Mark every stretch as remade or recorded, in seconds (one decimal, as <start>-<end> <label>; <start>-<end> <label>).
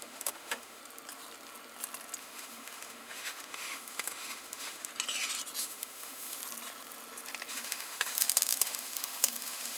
0.0-0.8 remade; 0.8-2.2 recorded; 2.2-4.9 remade; 4.9-5.6 recorded; 5.6-6.4 remade; 6.4-7.5 recorded; 7.5-9.8 remade